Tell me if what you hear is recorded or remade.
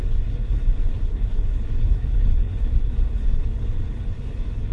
remade